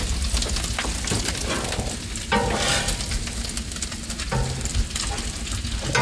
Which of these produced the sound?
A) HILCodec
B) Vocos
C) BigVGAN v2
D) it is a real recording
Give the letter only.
D